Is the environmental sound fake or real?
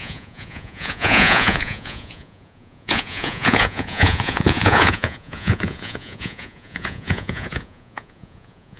fake